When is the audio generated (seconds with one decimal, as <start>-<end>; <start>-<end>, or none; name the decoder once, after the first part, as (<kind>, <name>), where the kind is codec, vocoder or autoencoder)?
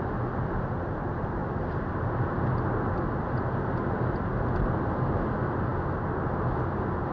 none